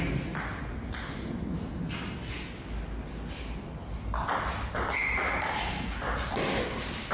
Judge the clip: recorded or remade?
recorded